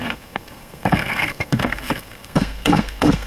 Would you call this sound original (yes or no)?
no